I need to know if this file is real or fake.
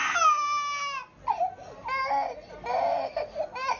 real